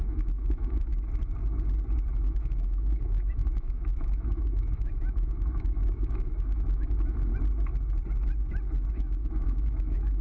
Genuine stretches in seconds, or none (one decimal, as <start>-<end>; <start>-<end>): 0.9-2.1; 7.3-8.9